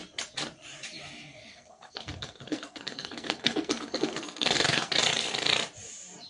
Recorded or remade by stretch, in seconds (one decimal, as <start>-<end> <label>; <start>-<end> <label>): 0.0-1.5 recorded; 1.5-4.9 remade; 4.9-6.3 recorded